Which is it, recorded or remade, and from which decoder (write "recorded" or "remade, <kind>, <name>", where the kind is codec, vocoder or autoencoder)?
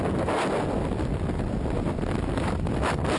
recorded